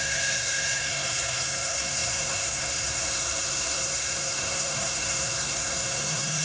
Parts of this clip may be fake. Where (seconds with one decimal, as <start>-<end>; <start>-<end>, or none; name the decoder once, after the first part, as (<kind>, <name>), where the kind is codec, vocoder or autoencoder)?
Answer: 0.0-6.4 (codec, SNAC)